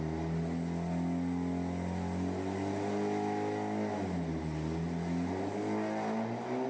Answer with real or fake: real